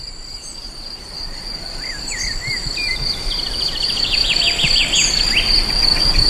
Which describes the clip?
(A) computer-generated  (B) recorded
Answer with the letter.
B